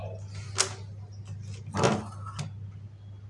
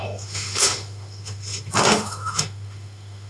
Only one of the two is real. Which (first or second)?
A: first